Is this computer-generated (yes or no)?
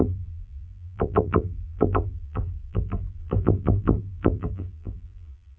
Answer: yes